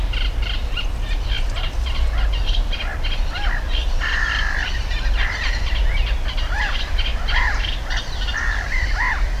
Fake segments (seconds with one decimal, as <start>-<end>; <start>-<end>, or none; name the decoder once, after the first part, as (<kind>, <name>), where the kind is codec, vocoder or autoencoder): none